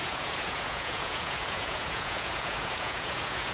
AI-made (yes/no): yes